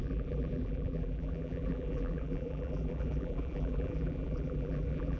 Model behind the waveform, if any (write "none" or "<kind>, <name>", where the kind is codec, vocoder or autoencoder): vocoder, BigVGAN v2